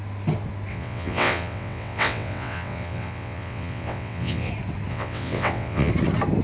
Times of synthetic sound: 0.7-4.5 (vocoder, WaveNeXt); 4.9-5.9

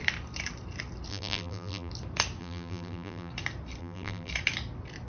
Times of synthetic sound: 1.1-1.9 (vocoder, BigVGAN v2); 2.4-3.3; 3.8-4.3

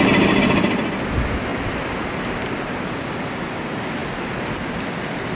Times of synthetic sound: none

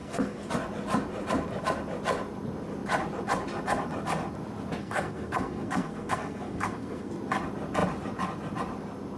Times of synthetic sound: 0.0-0.5 (codec, SNAC); 4.8-7.1

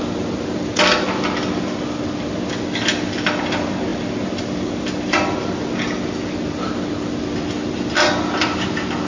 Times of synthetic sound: none

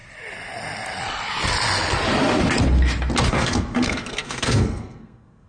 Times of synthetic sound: 3.3-5.5 (codec, SNAC)

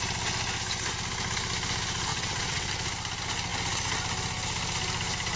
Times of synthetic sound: 2.1-2.7 (vocoder, WaveNeXt)